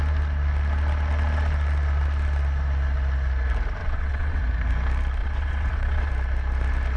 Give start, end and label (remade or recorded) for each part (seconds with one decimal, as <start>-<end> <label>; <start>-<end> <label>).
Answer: 0.0-3.8 recorded; 3.8-4.4 remade; 4.4-5.2 recorded; 5.2-6.1 remade; 6.1-7.0 recorded